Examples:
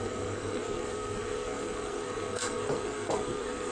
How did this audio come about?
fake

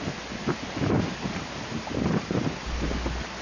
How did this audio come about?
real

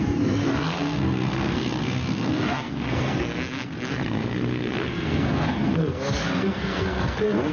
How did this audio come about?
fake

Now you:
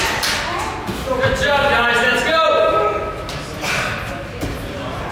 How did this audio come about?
real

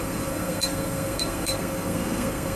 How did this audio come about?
fake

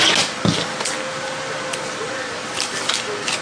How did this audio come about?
real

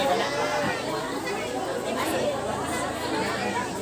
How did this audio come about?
real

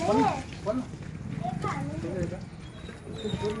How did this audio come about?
real